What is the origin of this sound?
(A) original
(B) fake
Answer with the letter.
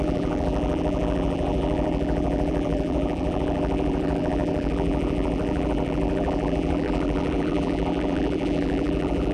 B